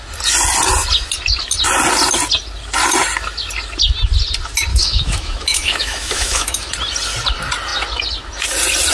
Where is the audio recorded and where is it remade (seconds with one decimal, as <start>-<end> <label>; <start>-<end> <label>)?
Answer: 0.0-4.7 recorded; 4.7-6.7 remade; 6.7-8.9 recorded